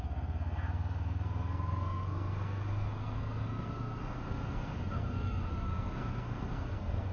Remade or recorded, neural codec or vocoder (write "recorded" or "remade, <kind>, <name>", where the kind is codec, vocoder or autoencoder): remade, codec, SNAC